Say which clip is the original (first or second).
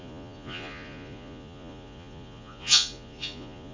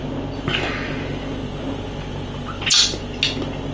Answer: second